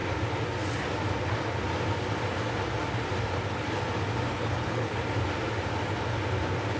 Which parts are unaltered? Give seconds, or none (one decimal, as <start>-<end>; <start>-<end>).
0.0-4.3; 5.0-6.8